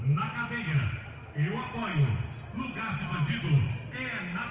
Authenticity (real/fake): real